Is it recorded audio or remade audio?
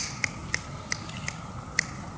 recorded